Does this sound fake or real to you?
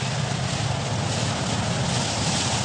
real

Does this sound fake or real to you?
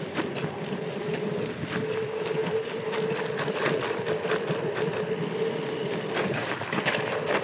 real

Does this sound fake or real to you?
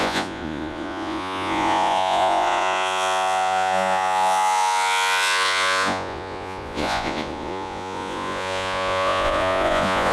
fake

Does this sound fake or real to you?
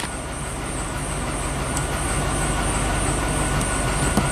real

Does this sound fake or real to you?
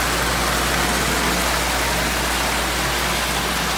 real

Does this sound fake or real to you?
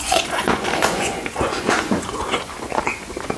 fake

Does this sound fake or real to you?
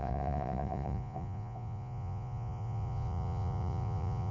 fake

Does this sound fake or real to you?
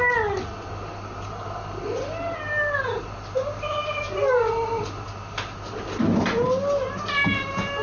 real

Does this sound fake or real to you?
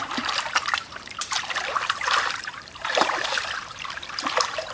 fake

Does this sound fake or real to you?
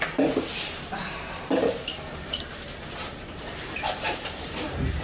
fake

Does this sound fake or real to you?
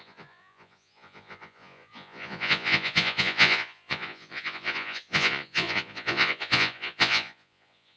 fake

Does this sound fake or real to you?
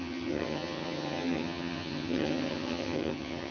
fake